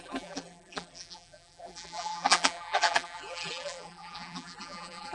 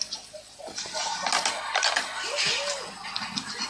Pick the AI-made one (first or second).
first